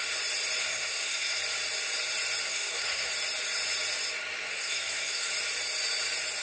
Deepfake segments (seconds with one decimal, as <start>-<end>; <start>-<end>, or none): 0.6-1.4; 2.4-3.1; 4.5-5.3